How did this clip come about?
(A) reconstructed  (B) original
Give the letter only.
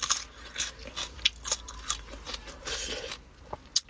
B